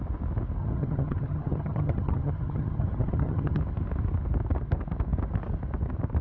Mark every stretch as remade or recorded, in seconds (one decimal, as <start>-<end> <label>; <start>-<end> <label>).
0.0-0.6 recorded; 0.6-3.6 remade; 3.6-6.2 recorded